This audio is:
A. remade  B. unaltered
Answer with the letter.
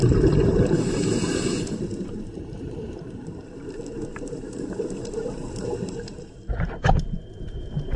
A